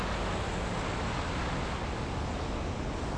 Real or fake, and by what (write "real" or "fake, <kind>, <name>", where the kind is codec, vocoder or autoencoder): real